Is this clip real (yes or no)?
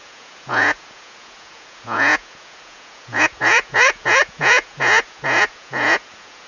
no